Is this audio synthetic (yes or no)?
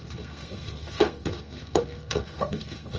yes